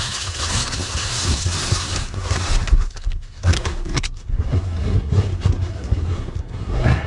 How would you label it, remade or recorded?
remade